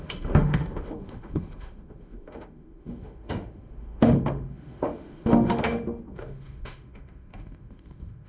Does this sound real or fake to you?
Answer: fake